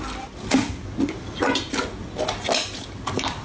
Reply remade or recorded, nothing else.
recorded